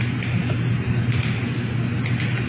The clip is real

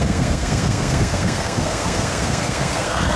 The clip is fake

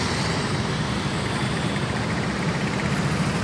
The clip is fake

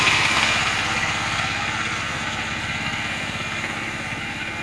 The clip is fake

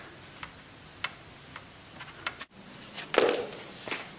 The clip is real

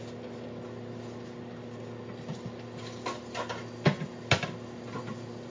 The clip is real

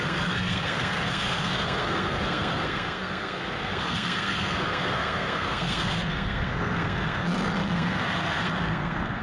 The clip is fake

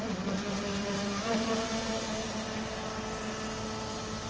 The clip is real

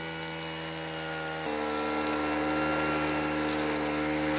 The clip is real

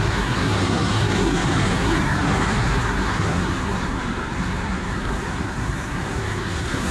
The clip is fake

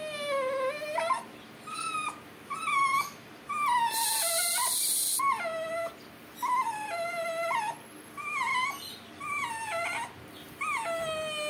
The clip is real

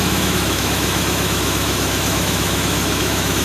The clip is fake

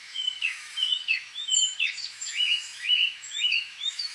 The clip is fake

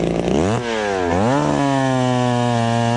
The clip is real